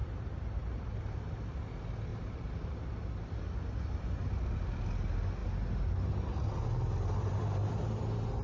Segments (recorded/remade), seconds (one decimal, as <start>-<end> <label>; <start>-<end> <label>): 0.0-1.0 remade; 1.0-2.1 recorded; 2.1-2.7 remade; 2.7-8.4 recorded